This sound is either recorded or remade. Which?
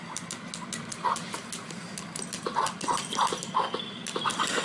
recorded